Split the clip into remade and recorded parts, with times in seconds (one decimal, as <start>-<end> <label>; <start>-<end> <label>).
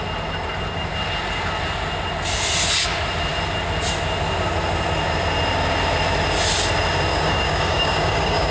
0.0-7.1 recorded; 7.1-8.5 remade